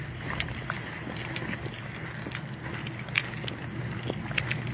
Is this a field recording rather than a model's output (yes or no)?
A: yes